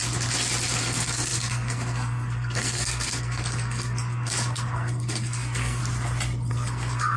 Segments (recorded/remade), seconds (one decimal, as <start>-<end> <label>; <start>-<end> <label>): 0.0-0.8 recorded; 0.8-5.8 remade; 5.8-6.5 recorded; 6.5-7.2 remade